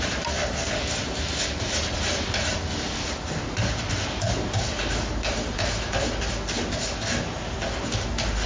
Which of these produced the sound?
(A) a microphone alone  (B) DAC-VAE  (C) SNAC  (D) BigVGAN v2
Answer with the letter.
A